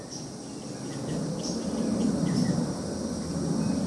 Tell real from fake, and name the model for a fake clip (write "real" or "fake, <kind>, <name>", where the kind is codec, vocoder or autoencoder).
real